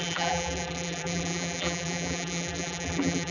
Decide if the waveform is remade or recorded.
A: remade